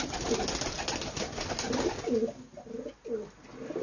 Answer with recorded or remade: recorded